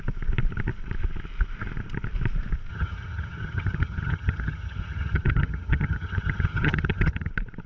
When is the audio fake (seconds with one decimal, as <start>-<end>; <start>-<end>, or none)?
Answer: 2.7-7.3